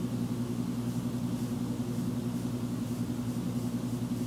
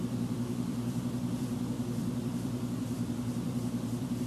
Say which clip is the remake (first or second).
second